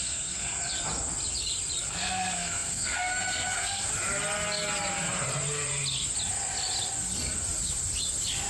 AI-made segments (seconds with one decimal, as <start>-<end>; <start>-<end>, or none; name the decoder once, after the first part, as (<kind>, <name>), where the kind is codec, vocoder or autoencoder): 0.0-0.6 (codec, SNAC); 1.9-3.9

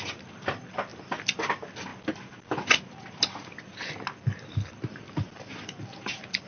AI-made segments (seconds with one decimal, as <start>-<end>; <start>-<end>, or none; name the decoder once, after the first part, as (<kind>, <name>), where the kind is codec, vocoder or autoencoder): none